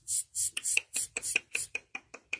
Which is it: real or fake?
fake